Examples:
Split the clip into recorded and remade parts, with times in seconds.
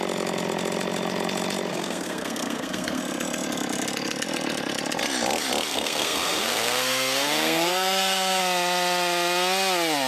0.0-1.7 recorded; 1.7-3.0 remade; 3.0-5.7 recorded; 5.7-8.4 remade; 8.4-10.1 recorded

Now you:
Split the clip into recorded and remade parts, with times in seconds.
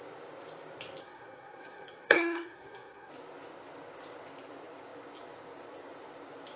0.0-1.0 recorded; 1.0-3.1 remade; 3.1-6.6 recorded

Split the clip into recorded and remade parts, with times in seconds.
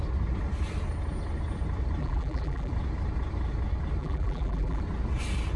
0.0-2.0 recorded; 2.0-2.7 remade; 2.7-4.0 recorded; 4.0-4.8 remade; 4.8-5.6 recorded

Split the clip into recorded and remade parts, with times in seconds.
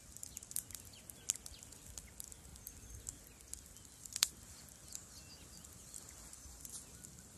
0.0-7.4 recorded